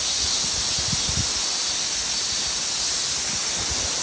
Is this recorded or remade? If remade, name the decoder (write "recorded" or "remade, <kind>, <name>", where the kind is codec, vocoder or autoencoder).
recorded